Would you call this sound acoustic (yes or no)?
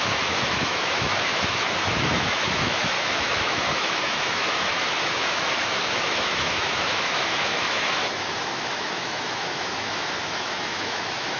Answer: no